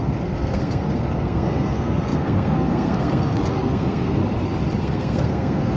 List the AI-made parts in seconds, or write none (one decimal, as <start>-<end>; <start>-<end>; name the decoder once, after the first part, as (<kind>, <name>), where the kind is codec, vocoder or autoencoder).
0.0-4.2 (codec, SNAC); 4.8-5.8